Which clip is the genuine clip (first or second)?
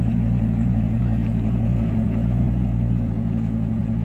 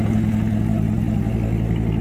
second